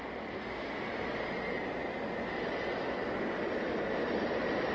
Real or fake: real